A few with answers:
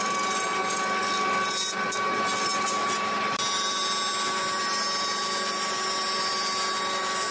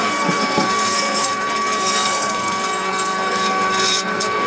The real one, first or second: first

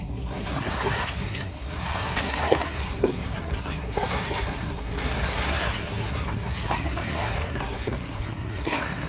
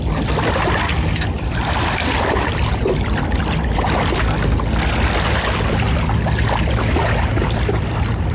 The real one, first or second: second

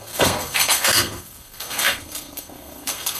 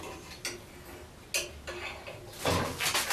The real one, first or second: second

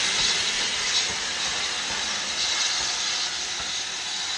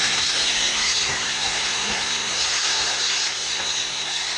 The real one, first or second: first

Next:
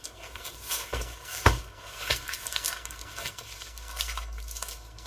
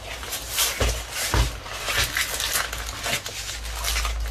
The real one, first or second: second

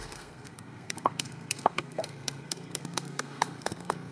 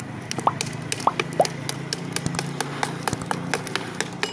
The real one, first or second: second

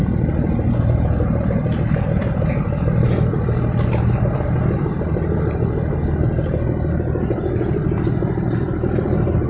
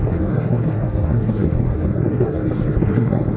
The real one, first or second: first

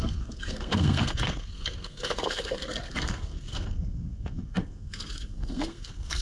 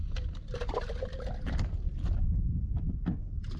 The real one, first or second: second